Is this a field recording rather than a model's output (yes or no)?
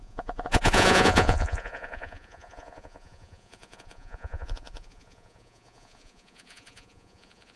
no